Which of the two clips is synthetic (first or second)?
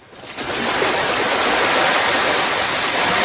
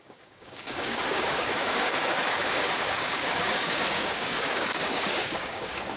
second